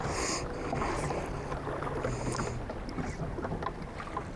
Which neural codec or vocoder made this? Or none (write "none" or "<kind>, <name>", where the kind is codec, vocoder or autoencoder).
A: none